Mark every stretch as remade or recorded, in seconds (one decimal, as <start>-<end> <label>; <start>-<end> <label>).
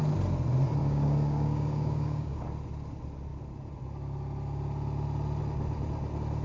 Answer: 0.0-0.8 recorded; 0.8-2.4 remade; 2.4-6.4 recorded